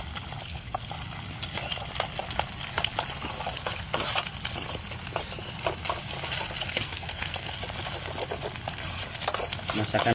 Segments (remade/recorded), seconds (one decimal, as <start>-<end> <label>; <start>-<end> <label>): 0.0-0.4 recorded; 0.4-0.9 remade; 0.9-6.6 recorded; 6.6-7.6 remade; 7.6-10.1 recorded